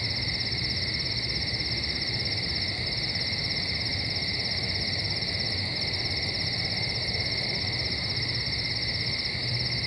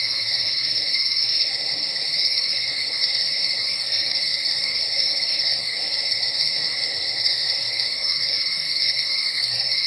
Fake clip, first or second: second